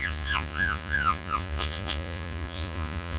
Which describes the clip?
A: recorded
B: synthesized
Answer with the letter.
B